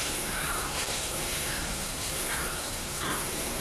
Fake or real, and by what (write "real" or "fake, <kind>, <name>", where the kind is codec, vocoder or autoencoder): fake, codec, SNAC